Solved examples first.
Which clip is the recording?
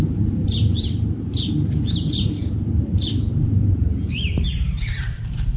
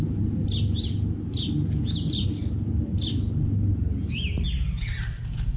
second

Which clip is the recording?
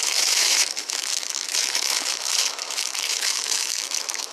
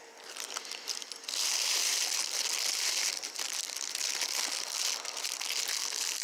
second